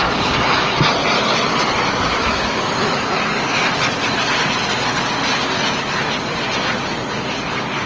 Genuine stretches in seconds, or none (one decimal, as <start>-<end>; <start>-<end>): 0.0-2.1; 3.1-7.9